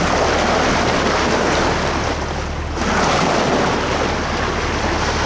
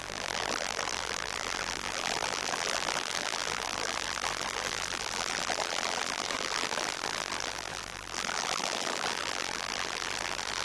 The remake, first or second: second